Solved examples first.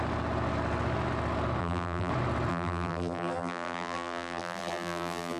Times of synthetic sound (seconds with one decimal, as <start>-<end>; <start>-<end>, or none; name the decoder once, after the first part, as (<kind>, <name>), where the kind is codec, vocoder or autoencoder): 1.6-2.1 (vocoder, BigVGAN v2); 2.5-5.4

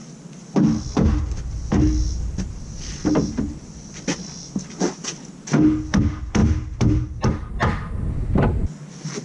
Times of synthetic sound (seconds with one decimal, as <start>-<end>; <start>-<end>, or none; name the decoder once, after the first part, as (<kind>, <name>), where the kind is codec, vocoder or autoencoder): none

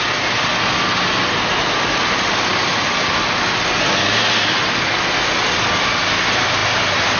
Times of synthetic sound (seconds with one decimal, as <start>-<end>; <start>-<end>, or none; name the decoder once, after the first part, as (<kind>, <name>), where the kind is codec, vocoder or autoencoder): none